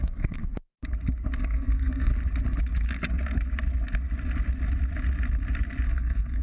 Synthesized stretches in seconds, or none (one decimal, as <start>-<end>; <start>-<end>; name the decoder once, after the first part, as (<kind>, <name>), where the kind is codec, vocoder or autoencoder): 0.0-0.4 (codec, SNAC); 1.4-2.1; 5.9-6.4

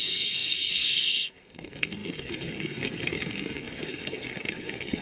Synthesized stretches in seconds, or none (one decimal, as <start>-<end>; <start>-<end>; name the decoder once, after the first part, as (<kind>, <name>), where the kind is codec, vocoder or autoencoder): 0.0-5.0 (codec, SNAC)